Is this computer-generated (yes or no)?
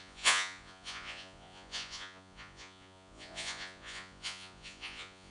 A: yes